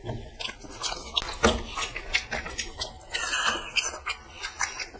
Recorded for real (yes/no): yes